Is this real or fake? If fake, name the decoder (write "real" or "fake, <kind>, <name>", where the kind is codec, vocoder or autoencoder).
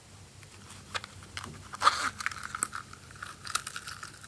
real